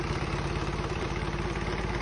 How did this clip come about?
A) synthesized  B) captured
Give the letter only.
A